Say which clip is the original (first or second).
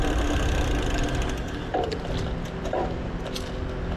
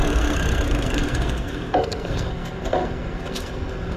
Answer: first